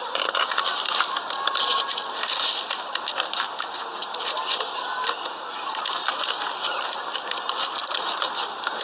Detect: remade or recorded recorded